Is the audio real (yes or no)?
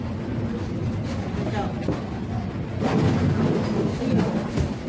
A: yes